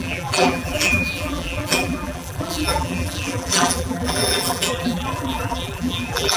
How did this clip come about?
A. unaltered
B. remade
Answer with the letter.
B